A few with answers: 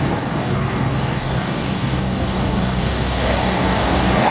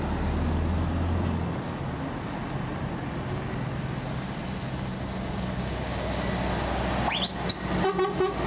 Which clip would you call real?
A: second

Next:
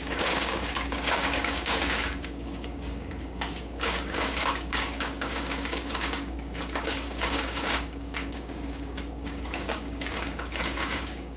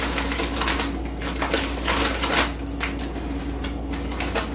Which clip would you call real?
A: second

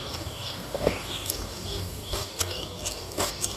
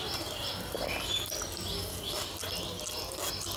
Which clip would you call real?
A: second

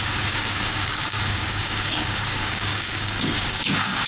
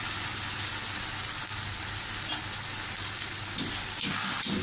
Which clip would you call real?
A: second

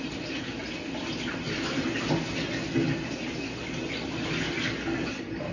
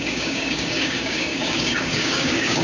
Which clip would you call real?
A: first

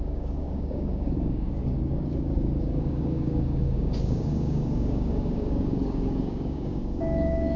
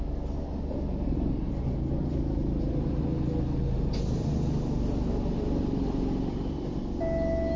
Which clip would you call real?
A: second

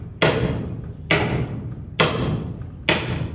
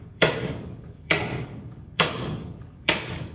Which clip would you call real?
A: first